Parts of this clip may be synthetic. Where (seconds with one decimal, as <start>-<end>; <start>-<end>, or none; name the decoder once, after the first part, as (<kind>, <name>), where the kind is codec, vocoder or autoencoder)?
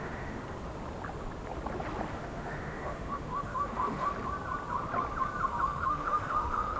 0.0-0.4 (autoencoder, DAC-VAE); 2.1-4.1; 5.6-6.8